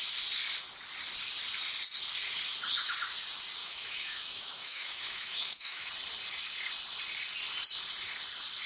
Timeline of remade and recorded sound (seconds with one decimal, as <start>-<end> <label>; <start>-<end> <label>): 0.0-3.6 recorded; 3.6-5.9 remade; 5.9-8.7 recorded